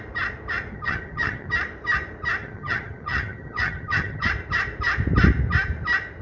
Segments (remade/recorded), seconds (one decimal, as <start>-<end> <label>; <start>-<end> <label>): 0.0-0.7 recorded; 0.7-1.5 remade; 1.5-2.4 recorded; 2.4-4.3 remade; 4.3-6.2 recorded